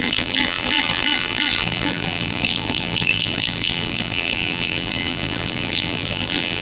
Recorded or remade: remade